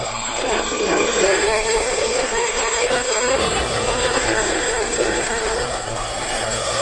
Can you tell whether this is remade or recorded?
remade